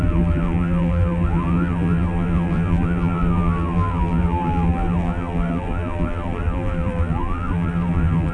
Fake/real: fake